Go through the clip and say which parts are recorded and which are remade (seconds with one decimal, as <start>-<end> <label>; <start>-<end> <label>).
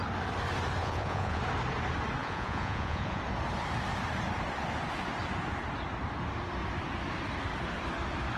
0.0-0.8 recorded; 0.8-1.4 remade; 1.4-2.2 recorded; 2.2-3.2 remade; 3.2-8.4 recorded